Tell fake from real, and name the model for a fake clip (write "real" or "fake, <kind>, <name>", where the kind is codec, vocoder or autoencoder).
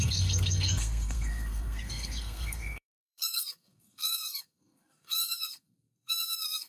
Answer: fake, codec, SNAC